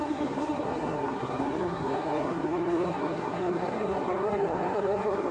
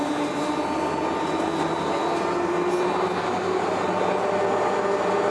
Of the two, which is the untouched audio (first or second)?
second